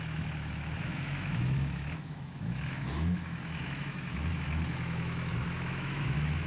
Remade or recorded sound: remade